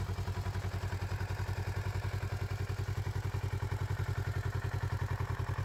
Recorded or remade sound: recorded